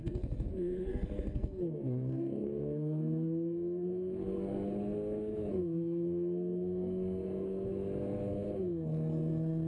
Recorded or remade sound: remade